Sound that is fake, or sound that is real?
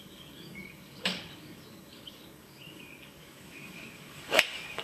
fake